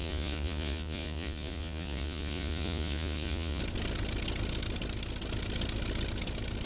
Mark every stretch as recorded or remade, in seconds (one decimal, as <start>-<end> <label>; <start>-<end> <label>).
0.0-3.6 remade; 3.6-6.7 recorded